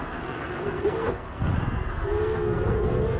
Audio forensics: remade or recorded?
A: remade